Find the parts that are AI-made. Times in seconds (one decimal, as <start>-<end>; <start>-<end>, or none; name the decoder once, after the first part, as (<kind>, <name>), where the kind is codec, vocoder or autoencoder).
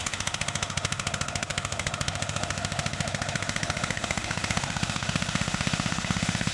0.0-6.5 (autoencoder, DAC-VAE)